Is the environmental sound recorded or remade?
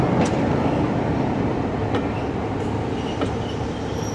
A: recorded